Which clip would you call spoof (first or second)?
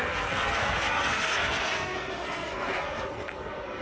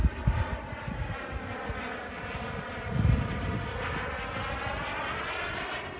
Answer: first